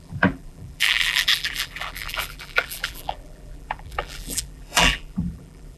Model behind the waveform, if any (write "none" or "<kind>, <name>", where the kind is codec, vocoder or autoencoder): vocoder, BigVGAN v2